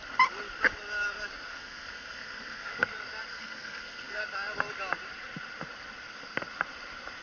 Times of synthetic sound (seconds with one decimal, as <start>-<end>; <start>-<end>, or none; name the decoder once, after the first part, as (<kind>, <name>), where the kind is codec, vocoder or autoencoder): 1.5-2.7 (codec, SNAC); 3.3-4.2

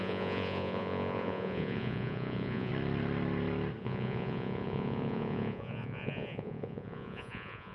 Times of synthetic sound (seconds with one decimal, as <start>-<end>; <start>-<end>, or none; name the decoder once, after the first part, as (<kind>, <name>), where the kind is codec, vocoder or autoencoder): 0.0-2.7 (vocoder, Vocos); 3.8-7.7

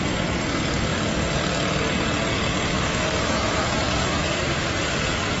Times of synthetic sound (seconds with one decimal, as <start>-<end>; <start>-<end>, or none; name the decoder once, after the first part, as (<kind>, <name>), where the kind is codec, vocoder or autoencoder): 2.7-4.4 (autoencoder, DAC-VAE)

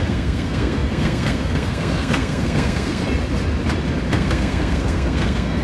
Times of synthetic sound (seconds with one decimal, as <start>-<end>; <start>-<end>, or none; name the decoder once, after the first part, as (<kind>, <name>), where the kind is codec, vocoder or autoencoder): 0.0-3.0 (codec, SNAC); 4.1-5.6

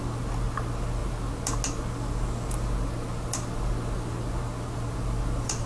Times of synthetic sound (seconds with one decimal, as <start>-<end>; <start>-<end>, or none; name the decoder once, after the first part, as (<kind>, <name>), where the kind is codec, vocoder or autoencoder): none

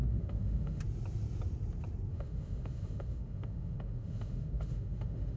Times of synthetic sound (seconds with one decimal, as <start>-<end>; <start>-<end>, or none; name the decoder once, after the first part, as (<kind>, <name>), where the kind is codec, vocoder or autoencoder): 0.0-0.8 (autoencoder, DAC-VAE); 2.1-5.4

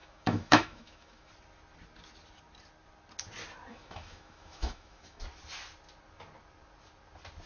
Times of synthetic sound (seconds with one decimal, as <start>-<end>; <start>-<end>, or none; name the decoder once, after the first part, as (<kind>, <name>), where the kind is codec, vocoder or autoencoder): 0.0-1.3 (autoencoder, DAC-VAE); 3.7-5.2